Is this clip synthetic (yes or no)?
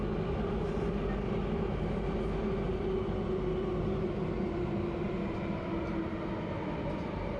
no